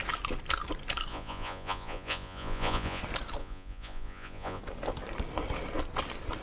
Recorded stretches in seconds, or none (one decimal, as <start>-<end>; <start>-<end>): 0.0-1.1; 3.0-3.4; 4.6-6.4